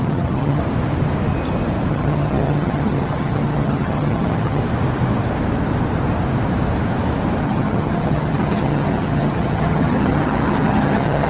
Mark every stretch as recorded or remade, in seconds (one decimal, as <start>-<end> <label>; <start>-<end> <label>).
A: 0.0-0.6 remade; 0.6-1.9 recorded; 1.9-4.6 remade; 4.6-7.4 recorded; 7.4-11.3 remade